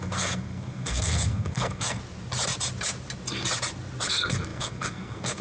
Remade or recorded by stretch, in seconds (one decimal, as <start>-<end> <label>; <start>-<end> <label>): 0.0-2.0 remade; 2.0-4.1 recorded; 4.1-5.4 remade